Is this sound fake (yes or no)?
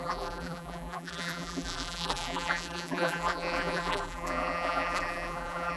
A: yes